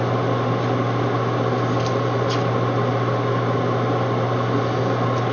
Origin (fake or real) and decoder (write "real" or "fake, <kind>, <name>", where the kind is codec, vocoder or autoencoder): real